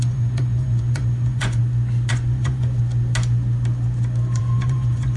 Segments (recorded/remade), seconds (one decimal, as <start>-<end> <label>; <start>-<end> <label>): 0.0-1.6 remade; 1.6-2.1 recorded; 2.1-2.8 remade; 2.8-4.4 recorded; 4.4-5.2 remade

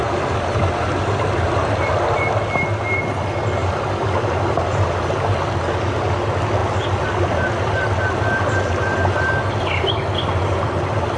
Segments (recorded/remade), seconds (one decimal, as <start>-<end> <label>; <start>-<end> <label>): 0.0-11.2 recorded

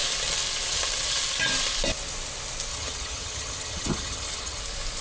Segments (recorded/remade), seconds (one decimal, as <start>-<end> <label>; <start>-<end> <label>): 0.0-2.7 recorded; 2.7-4.6 remade; 4.6-5.0 recorded

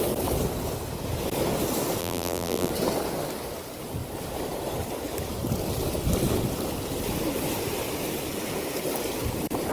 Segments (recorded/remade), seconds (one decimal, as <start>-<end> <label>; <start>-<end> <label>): 0.0-2.0 recorded; 2.0-2.7 remade; 2.7-9.7 recorded

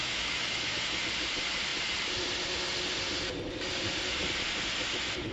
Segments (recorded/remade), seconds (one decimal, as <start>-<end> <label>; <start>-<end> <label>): 0.0-1.0 remade; 1.0-5.3 recorded

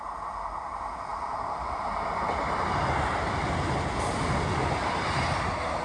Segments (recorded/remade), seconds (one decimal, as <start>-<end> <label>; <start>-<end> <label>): 0.0-5.8 recorded